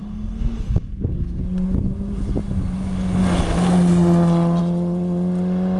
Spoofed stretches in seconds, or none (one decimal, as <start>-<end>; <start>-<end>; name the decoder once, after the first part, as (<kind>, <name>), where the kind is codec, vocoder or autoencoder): 0.0-1.4 (codec, SNAC)